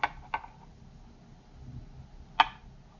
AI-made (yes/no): no